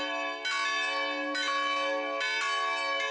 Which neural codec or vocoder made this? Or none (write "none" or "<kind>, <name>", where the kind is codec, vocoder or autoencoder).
none